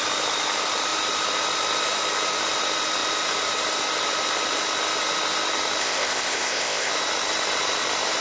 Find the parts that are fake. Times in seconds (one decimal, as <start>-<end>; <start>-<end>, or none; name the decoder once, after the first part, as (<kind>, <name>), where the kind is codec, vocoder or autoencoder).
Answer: 5.8-6.9 (codec, ZipCodec)